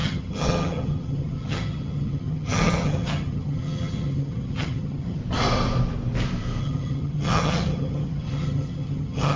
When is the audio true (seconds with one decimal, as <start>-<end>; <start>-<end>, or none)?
5.2-6.6